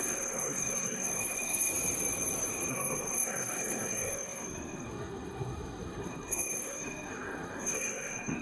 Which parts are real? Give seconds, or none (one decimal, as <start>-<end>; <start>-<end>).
1.7-2.7